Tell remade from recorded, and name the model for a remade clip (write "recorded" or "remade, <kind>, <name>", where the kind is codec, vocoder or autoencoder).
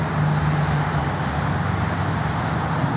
recorded